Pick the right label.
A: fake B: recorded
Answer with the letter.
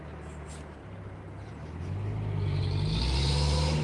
B